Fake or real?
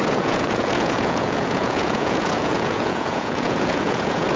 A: fake